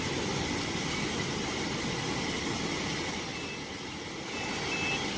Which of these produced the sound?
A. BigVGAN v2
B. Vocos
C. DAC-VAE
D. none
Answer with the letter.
D